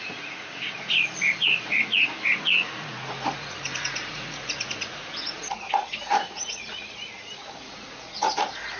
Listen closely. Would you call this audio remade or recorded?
remade